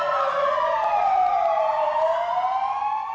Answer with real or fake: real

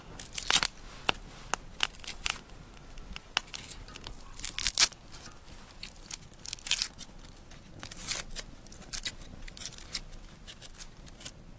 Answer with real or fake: real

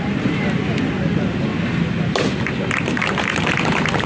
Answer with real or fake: real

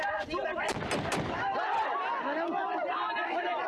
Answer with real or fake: real